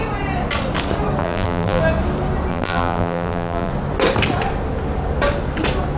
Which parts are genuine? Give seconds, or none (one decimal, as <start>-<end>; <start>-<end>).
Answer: 0.0-1.2; 1.8-2.5; 3.7-6.0